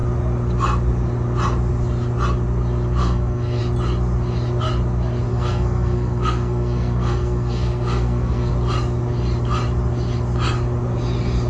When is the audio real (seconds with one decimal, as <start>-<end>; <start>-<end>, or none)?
0.0-3.0; 3.6-5.3; 8.5-11.5